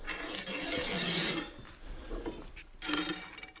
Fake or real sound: real